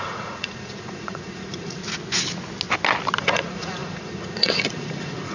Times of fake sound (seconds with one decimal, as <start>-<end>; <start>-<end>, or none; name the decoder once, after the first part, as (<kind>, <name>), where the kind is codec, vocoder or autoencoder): 0.0-1.8 (vocoder, Vocos); 3.2-5.3